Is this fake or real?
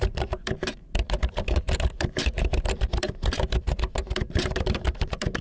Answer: fake